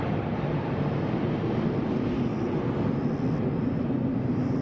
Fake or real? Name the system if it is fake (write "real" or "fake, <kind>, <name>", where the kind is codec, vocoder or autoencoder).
real